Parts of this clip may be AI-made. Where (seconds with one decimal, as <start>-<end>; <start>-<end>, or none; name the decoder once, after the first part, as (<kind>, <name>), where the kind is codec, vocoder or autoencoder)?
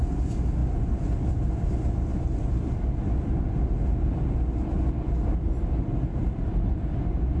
none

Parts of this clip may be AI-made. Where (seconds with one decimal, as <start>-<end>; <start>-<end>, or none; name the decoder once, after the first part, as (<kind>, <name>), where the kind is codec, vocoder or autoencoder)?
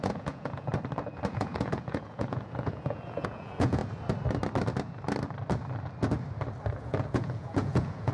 0.0-0.7 (vocoder, Vocos); 1.3-3.8; 6.8-8.1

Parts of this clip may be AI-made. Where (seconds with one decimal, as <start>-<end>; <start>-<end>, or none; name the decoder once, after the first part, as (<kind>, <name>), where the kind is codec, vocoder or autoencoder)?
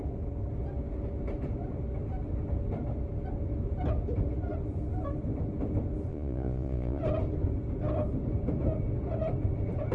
6.1-7.0 (vocoder, Vocos)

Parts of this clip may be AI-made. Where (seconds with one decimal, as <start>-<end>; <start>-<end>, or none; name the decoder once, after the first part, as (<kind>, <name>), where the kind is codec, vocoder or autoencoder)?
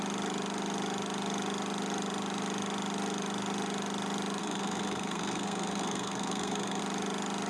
4.4-6.8 (codec, SNAC)